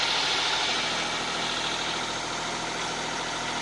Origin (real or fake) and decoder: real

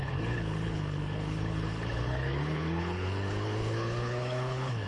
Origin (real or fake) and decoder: fake, codec, HILCodec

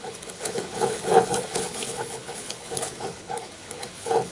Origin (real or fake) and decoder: fake, codec, HILCodec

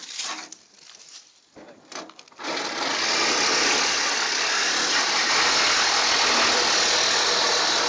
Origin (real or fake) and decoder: real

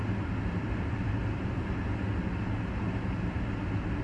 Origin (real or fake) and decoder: real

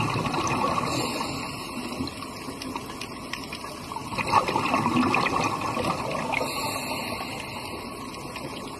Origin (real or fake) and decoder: real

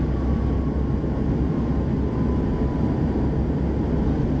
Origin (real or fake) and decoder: real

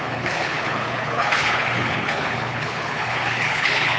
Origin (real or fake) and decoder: fake, codec, HILCodec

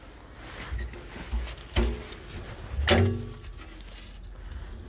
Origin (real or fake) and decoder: real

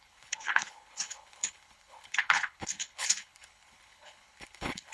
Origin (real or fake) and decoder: fake, codec, HILCodec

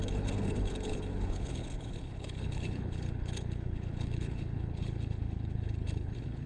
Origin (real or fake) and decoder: fake, codec, HILCodec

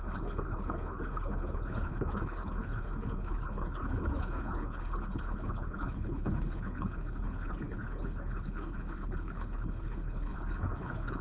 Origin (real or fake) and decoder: fake, codec, HILCodec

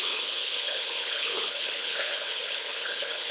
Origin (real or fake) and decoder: fake, codec, HILCodec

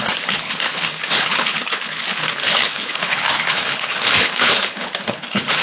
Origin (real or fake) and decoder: fake, codec, HILCodec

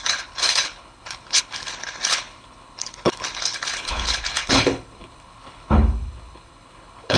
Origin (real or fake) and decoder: fake, codec, HILCodec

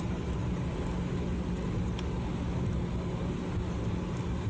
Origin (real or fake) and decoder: real